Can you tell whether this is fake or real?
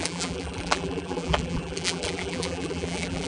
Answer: fake